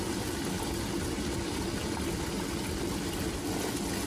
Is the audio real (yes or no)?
yes